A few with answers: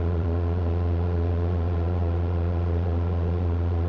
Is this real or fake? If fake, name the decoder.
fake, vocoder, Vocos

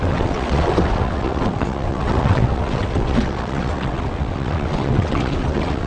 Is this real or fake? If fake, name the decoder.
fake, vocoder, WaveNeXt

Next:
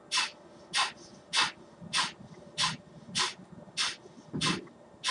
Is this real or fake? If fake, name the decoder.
real